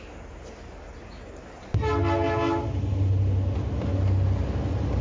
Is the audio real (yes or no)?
yes